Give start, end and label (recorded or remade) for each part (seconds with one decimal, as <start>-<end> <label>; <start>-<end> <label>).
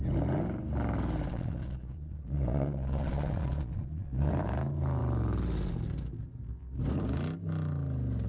0.0-1.3 recorded; 1.3-4.3 remade; 4.3-8.3 recorded